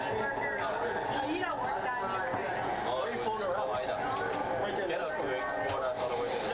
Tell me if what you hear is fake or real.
real